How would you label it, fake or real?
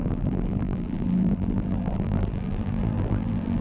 fake